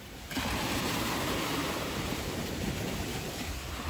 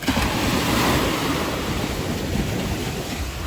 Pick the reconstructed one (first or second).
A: first